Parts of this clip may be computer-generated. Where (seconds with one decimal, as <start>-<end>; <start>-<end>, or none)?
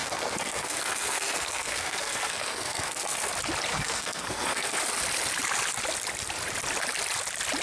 0.0-3.3; 3.7-4.8